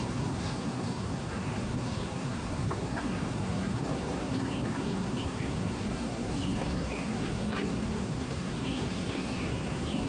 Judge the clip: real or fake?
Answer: fake